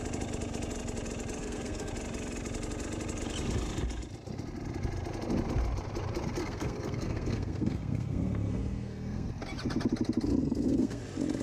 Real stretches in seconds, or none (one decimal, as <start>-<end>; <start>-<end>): 0.0-1.4; 1.9-6.4; 9.3-10.4; 11.0-11.4